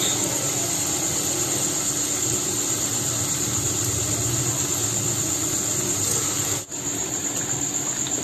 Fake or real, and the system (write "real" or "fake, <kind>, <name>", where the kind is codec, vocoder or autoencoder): real